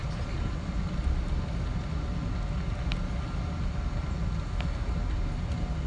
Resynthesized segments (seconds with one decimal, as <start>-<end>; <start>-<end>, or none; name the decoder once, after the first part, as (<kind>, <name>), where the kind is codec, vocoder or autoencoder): none